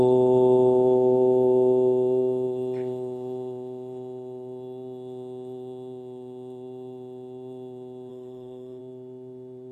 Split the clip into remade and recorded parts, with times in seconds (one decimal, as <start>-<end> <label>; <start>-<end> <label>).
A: 0.0-8.1 recorded; 8.1-8.8 remade; 8.8-9.7 recorded